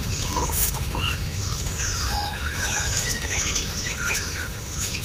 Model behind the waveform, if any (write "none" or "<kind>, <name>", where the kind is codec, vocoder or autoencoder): autoencoder, DAC-VAE